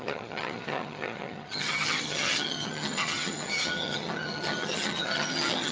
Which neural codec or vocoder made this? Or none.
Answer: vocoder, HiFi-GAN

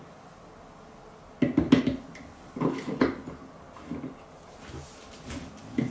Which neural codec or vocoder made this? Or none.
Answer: none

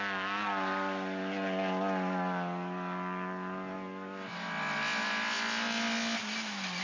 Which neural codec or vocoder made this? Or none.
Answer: none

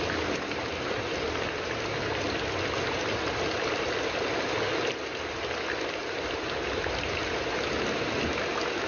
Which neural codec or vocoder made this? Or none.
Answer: none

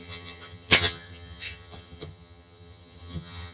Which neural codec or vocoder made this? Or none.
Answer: vocoder, HiFi-GAN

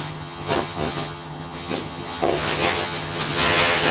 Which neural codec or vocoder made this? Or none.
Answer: vocoder, HiFi-GAN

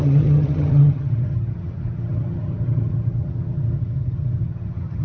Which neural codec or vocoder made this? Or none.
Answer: vocoder, HiFi-GAN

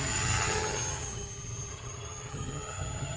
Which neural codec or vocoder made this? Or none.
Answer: vocoder, HiFi-GAN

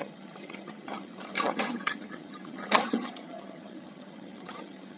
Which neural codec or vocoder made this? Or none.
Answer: vocoder, HiFi-GAN